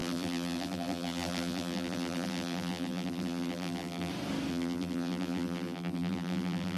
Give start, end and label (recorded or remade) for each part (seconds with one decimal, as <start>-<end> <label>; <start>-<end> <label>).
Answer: 0.0-4.1 remade; 4.1-4.5 recorded; 4.5-6.8 remade

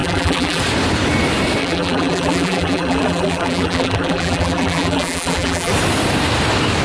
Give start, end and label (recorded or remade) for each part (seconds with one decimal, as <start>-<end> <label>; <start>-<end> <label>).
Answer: 0.0-0.6 remade; 0.6-1.6 recorded; 1.6-5.7 remade; 5.7-6.8 recorded

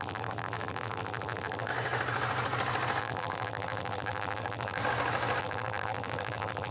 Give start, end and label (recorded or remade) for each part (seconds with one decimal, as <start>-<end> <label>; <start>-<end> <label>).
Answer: 0.0-1.7 remade; 1.7-3.0 recorded; 3.0-4.8 remade; 4.8-5.4 recorded; 5.4-6.7 remade